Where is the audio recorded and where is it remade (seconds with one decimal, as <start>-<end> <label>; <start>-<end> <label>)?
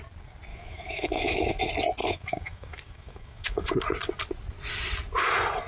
0.0-0.5 recorded; 0.5-1.6 remade; 1.6-2.0 recorded; 2.0-3.7 remade; 3.7-5.7 recorded